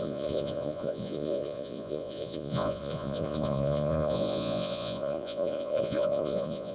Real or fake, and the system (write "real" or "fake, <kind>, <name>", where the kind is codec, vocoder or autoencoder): fake, vocoder, Vocos